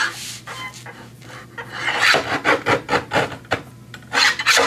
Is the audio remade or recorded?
recorded